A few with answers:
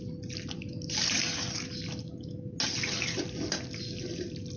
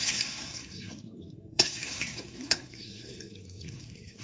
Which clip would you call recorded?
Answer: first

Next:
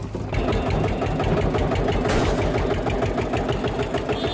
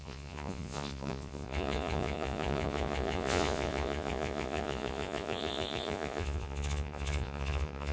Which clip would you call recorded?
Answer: first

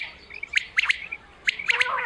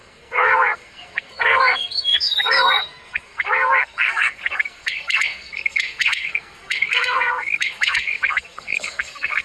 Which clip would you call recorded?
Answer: first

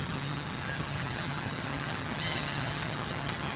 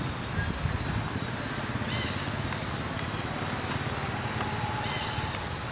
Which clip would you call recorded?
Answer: second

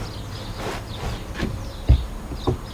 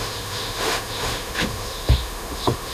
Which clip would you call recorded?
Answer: first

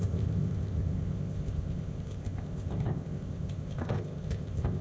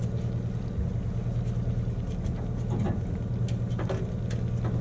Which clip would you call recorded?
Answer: second